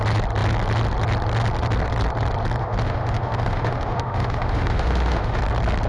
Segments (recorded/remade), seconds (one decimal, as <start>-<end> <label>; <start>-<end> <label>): 0.0-2.6 recorded; 2.6-5.4 remade; 5.4-5.9 recorded